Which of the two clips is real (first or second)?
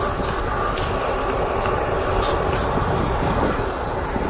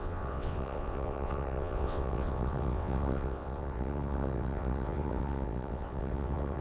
first